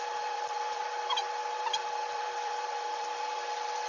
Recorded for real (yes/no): no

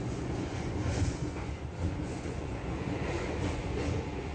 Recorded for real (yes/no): no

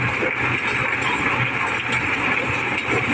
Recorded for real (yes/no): yes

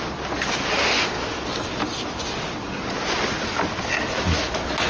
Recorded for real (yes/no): yes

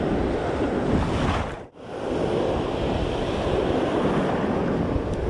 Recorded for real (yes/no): yes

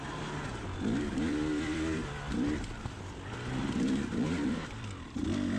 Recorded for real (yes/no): no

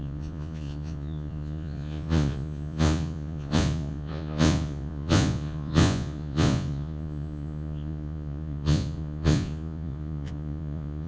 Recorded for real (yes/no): no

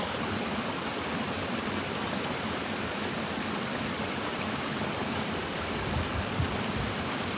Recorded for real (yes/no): no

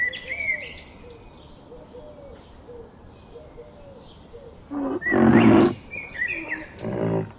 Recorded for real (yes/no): yes